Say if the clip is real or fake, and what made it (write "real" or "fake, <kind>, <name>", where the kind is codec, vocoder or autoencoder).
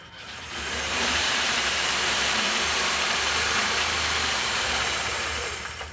fake, vocoder, BigVGAN v2